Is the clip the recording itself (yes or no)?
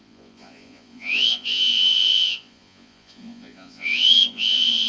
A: no